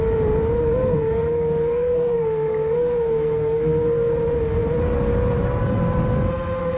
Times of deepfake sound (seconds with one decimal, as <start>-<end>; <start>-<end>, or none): 0.6-4.1